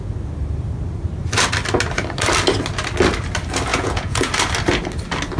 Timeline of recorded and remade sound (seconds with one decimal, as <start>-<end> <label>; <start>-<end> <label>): 0.0-3.7 recorded; 3.7-4.3 remade; 4.3-5.4 recorded